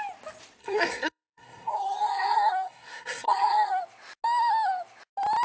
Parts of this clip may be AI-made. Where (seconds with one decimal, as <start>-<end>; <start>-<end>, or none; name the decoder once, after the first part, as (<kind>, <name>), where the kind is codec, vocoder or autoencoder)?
0.6-3.8 (codec, SNAC)